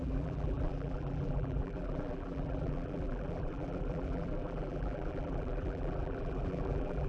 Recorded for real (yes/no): no